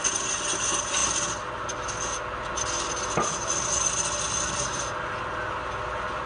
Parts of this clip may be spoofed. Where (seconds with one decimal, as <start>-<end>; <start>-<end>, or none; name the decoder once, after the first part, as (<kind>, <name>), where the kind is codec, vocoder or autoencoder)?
none